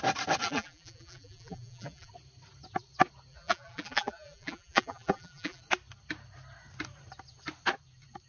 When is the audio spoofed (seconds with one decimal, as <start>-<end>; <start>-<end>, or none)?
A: 0.4-2.1; 3.3-5.6